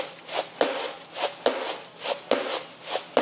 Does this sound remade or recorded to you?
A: recorded